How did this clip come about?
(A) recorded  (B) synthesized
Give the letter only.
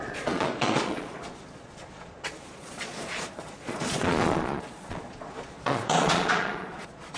B